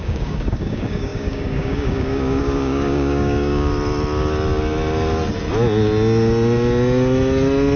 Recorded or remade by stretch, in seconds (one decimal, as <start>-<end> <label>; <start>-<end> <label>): 0.0-3.7 remade; 3.7-7.8 recorded